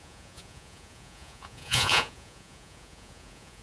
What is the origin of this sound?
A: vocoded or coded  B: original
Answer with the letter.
A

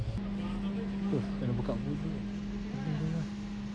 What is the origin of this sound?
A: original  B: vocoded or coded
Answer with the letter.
A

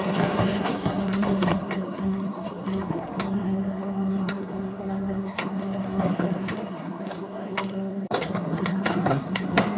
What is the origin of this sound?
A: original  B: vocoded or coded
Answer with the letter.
B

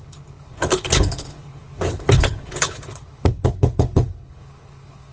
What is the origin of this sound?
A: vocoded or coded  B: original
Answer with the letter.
A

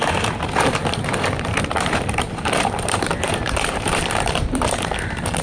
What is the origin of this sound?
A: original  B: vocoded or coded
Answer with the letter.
B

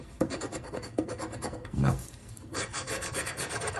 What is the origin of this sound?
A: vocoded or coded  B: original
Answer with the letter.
A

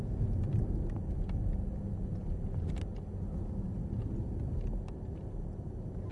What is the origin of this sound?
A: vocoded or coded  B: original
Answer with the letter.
B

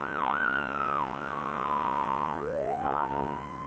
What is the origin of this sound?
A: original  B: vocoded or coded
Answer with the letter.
B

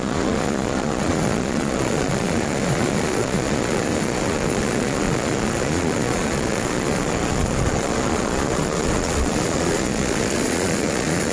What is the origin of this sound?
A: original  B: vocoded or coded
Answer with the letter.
B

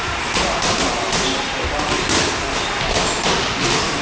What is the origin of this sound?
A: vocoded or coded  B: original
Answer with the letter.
B